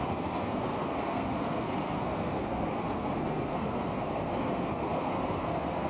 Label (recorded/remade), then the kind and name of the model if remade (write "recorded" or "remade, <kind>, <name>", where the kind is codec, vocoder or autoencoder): remade, codec, SNAC